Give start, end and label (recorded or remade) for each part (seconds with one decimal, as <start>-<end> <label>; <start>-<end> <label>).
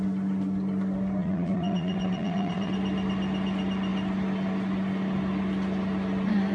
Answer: 0.0-1.2 recorded; 1.2-2.7 remade; 2.7-6.5 recorded